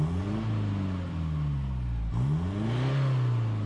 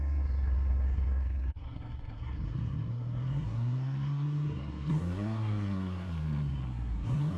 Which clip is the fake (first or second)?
second